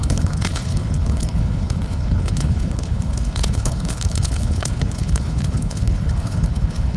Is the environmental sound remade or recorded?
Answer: remade